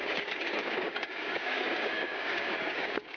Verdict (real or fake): fake